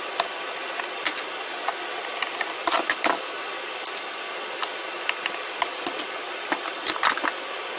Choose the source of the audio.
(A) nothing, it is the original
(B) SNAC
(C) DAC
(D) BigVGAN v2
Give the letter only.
A